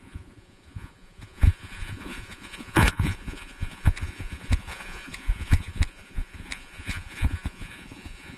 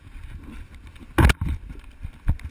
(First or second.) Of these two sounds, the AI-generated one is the first